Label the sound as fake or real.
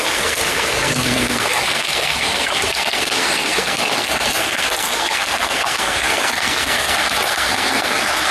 fake